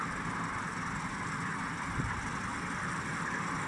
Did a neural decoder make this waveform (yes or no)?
no